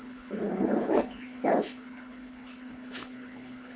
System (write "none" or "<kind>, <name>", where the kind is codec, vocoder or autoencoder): codec, HILCodec